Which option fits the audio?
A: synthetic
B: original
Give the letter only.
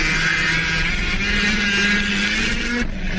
B